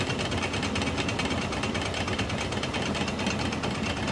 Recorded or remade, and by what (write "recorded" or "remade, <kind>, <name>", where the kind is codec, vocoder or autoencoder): recorded